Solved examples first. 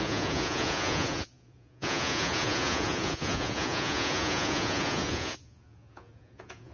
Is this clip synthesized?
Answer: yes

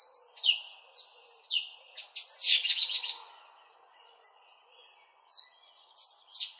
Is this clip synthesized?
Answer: yes